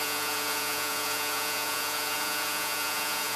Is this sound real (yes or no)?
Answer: no